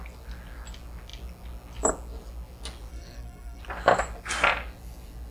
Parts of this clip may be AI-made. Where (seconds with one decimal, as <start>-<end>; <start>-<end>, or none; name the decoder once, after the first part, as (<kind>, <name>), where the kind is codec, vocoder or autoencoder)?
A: 2.9-3.6 (codec, SNAC)